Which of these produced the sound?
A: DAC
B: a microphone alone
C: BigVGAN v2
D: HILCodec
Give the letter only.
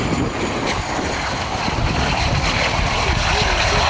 B